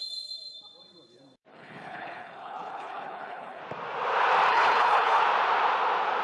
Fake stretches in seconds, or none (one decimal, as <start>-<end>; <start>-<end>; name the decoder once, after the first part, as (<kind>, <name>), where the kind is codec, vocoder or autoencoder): 1.5-3.6 (codec, HILCodec); 4.5-5.2